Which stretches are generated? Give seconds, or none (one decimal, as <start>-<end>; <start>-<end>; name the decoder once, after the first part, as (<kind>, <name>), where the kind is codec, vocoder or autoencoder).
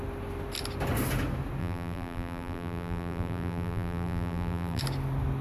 1.6-4.8 (vocoder, BigVGAN v2)